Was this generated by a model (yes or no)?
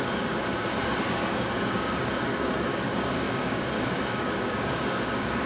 yes